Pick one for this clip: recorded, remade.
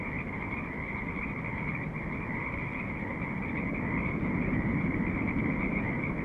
remade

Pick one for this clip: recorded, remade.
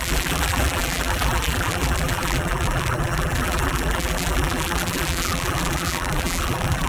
remade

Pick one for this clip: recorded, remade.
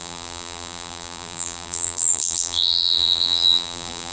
remade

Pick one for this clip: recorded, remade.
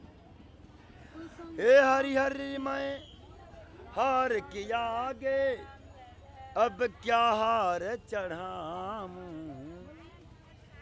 recorded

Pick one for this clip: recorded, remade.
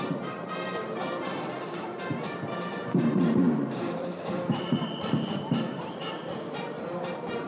remade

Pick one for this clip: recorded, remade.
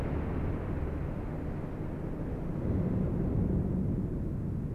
recorded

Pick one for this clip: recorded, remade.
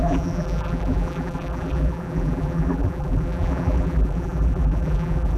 remade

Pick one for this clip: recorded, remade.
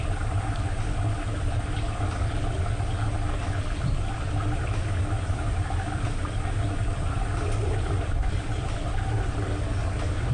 recorded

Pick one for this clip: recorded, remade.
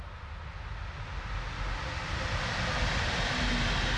recorded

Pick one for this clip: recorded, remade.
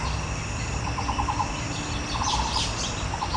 remade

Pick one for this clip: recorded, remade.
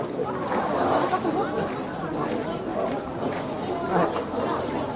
recorded